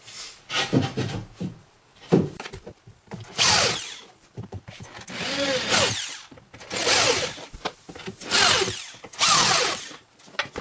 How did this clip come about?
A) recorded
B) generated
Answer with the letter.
B